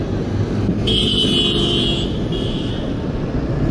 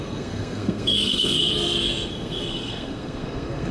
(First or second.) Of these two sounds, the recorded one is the first